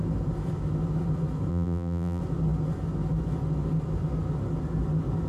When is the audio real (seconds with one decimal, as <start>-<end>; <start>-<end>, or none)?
0.0-1.5; 2.2-5.3